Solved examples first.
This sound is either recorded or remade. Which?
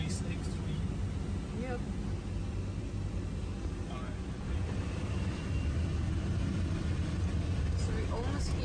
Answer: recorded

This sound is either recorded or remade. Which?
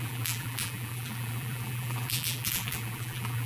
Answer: remade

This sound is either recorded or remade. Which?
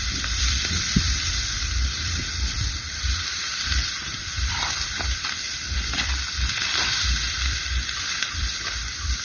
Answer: remade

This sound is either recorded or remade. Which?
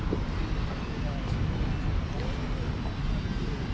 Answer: recorded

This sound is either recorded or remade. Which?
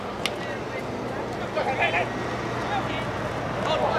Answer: recorded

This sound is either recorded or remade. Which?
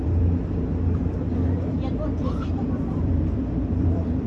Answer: remade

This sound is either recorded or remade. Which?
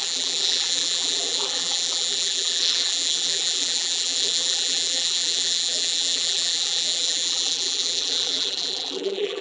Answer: remade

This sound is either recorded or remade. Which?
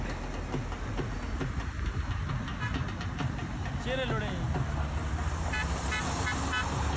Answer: recorded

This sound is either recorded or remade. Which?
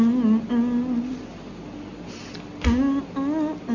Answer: recorded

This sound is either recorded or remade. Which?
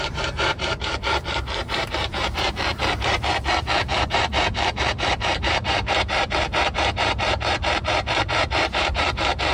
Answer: remade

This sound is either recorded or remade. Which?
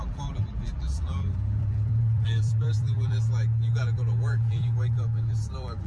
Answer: remade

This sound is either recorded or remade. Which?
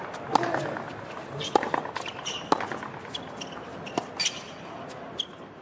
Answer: recorded